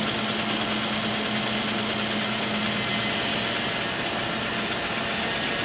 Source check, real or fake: real